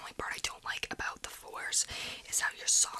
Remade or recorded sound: recorded